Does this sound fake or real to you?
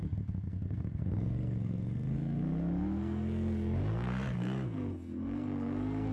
fake